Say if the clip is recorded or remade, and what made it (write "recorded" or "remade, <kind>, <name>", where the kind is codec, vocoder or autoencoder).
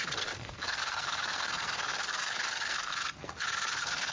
remade, codec, SNAC